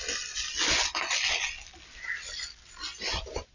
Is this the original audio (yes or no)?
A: yes